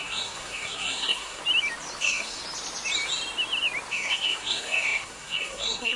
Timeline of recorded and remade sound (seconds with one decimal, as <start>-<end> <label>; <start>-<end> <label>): 0.0-1.4 remade; 1.4-2.0 recorded; 2.0-2.4 remade; 2.4-3.9 recorded; 3.9-6.0 remade